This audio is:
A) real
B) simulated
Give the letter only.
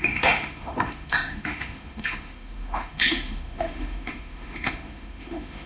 B